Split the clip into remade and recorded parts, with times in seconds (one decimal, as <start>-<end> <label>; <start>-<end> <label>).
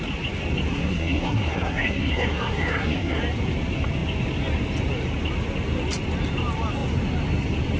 0.0-0.7 recorded; 0.7-3.2 remade; 3.2-7.8 recorded